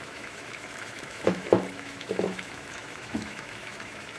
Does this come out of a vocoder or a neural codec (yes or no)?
yes